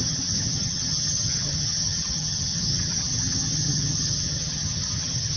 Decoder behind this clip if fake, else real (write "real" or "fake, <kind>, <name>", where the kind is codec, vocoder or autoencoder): fake, vocoder, HiFi-GAN